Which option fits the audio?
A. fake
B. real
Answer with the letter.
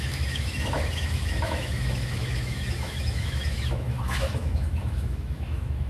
A